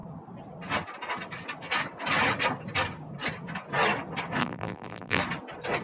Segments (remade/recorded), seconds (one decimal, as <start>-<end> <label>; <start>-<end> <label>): 0.0-4.4 recorded; 4.4-5.2 remade; 5.2-5.8 recorded